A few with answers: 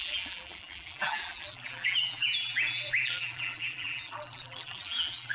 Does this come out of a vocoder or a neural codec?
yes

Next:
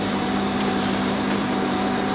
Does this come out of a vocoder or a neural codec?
yes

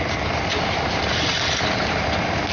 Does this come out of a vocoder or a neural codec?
no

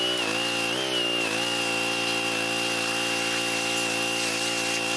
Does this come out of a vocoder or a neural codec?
no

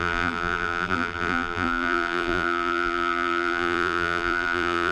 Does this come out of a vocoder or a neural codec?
yes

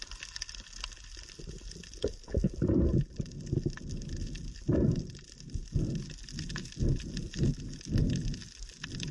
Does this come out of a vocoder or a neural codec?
no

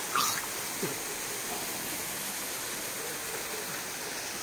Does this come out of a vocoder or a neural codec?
no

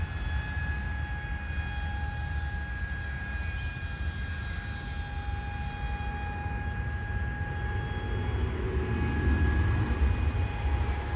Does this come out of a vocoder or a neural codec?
no